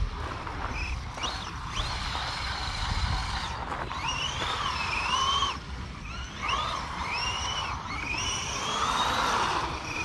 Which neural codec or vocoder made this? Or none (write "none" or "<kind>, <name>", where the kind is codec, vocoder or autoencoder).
none